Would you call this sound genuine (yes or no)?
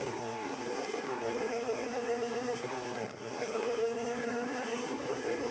no